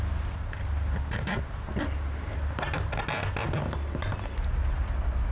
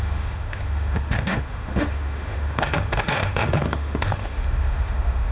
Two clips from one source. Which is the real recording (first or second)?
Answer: first